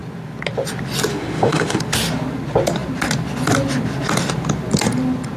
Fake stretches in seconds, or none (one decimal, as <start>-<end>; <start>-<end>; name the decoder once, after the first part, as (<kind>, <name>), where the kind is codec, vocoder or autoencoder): 1.1-1.8 (autoencoder, DAC-VAE)